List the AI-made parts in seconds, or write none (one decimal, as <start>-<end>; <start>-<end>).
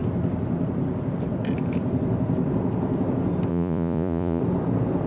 3.5-4.4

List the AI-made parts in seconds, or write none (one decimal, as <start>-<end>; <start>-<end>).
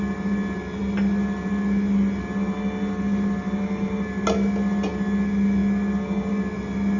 none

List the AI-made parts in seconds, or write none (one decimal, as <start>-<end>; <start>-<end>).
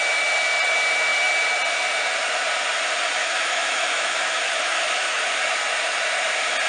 3.2-5.2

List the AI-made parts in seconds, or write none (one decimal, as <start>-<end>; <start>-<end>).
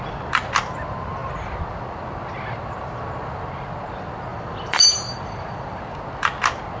4.3-5.8